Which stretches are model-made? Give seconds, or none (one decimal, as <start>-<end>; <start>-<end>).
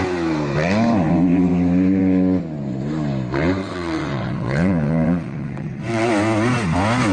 3.6-6.1